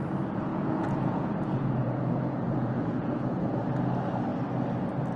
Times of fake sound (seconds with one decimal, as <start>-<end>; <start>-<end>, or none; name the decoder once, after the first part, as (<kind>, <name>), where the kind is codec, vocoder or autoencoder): 0.5-3.6 (vocoder, Vocos)